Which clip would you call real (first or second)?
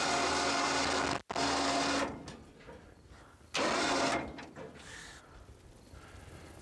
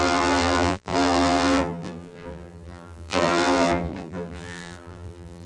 first